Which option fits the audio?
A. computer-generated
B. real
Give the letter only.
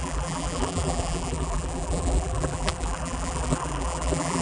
A